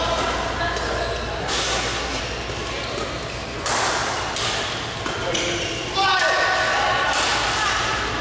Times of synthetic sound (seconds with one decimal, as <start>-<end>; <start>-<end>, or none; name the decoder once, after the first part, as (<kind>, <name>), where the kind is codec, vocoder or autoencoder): 1.4-2.2 (codec, SNAC)